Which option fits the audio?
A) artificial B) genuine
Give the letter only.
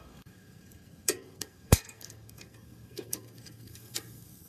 A